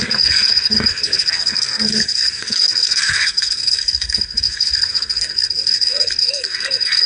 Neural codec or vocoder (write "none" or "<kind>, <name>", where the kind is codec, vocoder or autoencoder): codec, SNAC